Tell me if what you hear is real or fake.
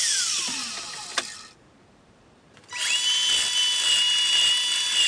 real